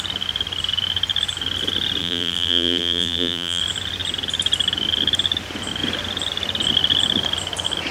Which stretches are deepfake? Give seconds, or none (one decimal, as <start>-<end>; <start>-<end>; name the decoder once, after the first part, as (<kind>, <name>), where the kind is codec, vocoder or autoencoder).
2.0-3.6 (vocoder, BigVGAN v2)